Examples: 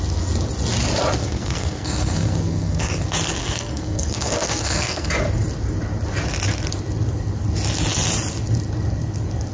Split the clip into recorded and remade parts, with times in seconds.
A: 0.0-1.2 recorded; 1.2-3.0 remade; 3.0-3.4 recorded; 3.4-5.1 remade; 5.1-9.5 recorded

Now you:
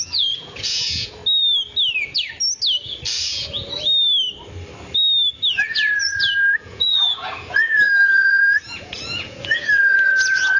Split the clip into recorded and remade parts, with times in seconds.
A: 0.0-1.2 remade; 1.2-5.5 recorded; 5.5-10.6 remade

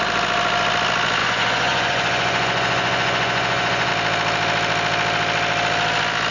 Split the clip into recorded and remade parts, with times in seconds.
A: 0.0-1.2 recorded; 1.2-3.9 remade; 3.9-6.3 recorded

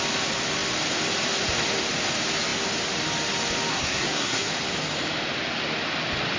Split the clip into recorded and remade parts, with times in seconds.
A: 0.0-3.7 recorded; 3.7-4.5 remade; 4.5-6.4 recorded

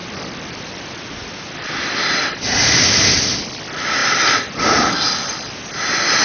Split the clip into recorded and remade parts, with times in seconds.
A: 0.0-6.2 recorded